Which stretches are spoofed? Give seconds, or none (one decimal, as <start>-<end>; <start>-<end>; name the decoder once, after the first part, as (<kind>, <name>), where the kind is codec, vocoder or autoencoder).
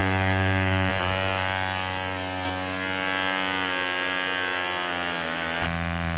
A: 0.0-0.9 (codec, DAC)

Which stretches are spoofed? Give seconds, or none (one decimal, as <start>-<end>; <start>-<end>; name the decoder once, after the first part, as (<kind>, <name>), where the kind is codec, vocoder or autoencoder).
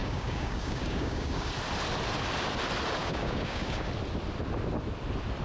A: 0.0-1.5 (codec, DAC); 3.0-3.9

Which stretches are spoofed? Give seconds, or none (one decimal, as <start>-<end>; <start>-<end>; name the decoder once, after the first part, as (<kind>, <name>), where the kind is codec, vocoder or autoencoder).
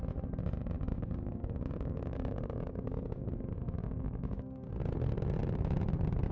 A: 0.9-4.7 (codec, DAC)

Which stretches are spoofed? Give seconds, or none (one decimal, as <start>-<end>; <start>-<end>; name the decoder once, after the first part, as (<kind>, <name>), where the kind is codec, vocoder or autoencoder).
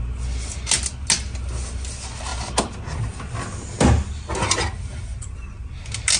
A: none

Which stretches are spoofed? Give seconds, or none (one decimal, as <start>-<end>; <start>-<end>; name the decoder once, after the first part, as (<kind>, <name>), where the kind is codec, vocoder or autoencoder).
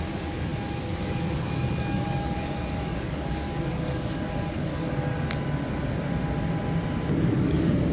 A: 0.0-5.1 (codec, DAC); 7.1-7.9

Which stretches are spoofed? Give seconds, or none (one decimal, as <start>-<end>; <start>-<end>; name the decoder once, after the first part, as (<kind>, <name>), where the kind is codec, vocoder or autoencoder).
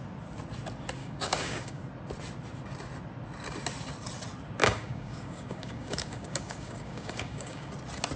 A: 1.0-1.8 (codec, DAC); 4.6-7.7